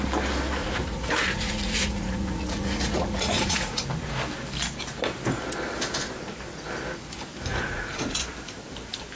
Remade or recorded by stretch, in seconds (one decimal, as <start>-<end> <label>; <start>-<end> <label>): 0.0-0.6 recorded; 0.6-3.8 remade; 3.8-7.5 recorded; 7.5-8.2 remade; 8.2-9.2 recorded